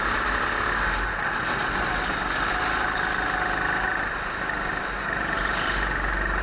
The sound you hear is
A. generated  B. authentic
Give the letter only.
B